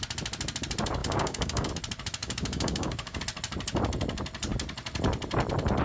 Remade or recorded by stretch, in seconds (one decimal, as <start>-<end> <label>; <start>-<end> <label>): 0.0-1.0 recorded; 1.0-1.7 remade; 1.7-2.2 recorded; 2.2-3.2 remade; 3.2-5.8 recorded